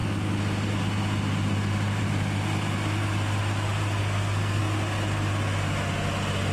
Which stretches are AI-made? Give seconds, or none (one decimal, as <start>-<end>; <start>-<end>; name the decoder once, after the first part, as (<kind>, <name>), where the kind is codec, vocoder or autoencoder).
4.0-4.6 (codec, SNAC)